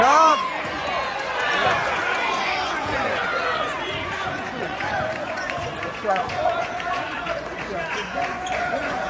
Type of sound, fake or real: fake